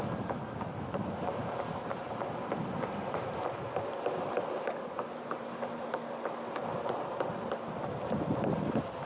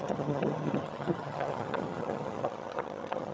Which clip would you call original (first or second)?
first